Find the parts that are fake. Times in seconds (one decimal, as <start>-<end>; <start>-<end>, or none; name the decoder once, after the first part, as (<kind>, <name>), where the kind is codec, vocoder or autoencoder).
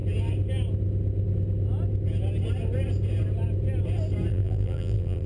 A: 4.3-5.3 (vocoder, BigVGAN v2)